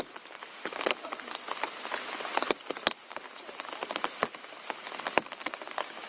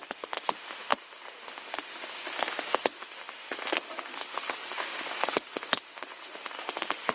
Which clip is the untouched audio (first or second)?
first